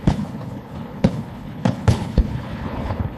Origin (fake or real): fake